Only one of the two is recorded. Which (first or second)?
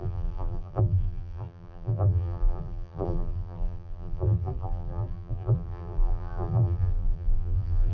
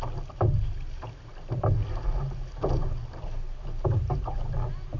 second